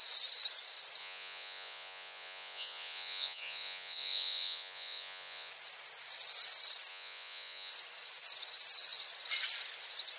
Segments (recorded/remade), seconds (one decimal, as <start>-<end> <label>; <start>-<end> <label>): 0.0-1.0 recorded; 1.0-5.5 remade; 5.5-6.9 recorded; 6.9-7.7 remade; 7.7-10.2 recorded